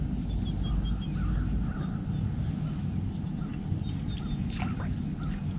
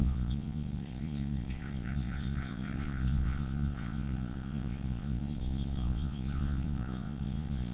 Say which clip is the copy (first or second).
second